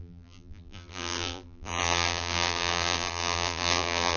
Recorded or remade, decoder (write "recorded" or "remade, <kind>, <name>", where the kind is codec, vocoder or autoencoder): remade, vocoder, BigVGAN v2